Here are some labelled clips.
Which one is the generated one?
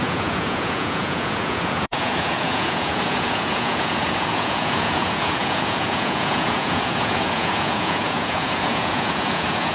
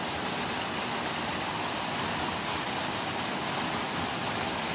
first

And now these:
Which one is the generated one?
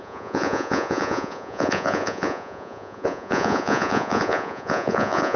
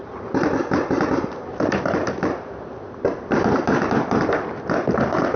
first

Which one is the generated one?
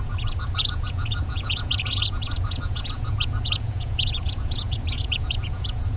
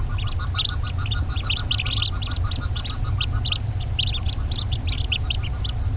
first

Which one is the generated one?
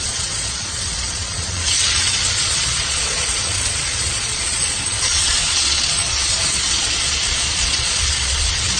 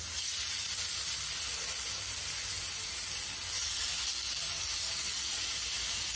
first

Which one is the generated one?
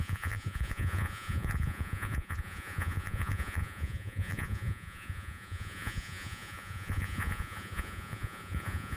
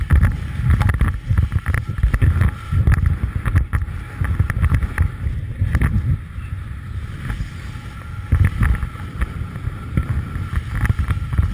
first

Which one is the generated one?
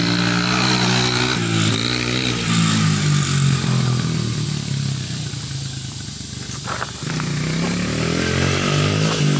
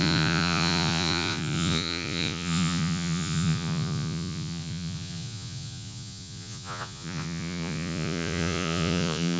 second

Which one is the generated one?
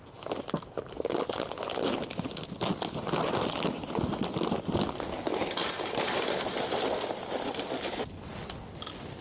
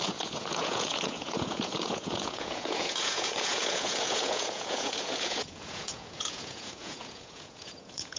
second